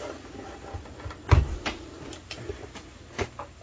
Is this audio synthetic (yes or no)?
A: no